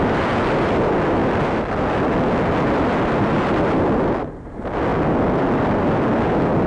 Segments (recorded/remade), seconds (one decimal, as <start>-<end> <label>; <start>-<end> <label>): 0.0-6.7 recorded